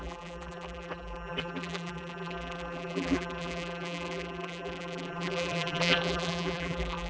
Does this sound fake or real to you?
fake